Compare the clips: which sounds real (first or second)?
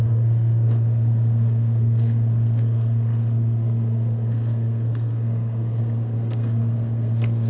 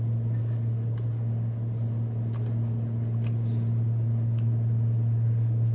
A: second